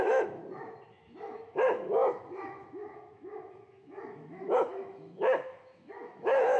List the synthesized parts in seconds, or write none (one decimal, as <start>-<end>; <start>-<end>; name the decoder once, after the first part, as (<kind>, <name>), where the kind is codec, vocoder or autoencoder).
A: 0.0-0.4 (autoencoder, DAC-VAE); 0.9-6.6